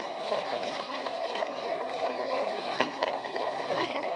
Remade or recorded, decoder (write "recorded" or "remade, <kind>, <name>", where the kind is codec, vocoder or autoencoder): remade, codec, SNAC